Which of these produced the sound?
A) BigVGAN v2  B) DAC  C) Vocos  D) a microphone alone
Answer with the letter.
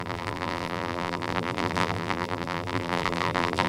A